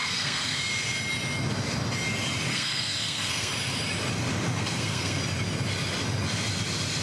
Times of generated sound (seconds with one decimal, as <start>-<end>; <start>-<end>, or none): 0.0-0.6; 2.5-3.5; 4.5-5.2